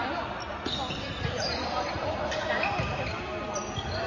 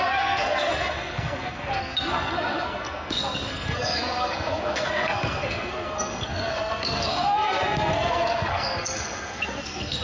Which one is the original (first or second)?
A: first